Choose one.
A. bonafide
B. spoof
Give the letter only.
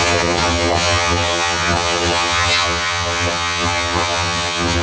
B